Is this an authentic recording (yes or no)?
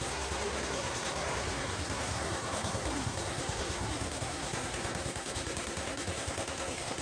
no